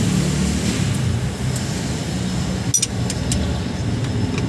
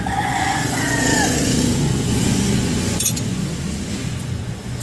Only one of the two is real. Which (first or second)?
first